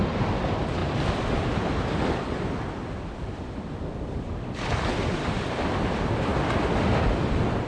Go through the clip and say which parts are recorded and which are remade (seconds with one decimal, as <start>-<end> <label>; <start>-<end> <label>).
0.0-7.7 recorded